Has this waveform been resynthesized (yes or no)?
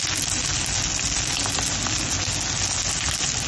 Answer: no